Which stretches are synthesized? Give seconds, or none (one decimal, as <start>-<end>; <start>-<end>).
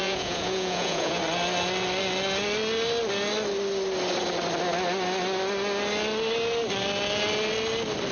0.0-1.2